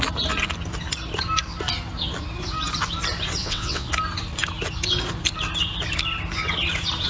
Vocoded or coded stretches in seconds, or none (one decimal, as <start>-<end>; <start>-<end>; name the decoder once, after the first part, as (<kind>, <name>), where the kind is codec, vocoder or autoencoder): 3.4-3.9 (vocoder, WaveNeXt)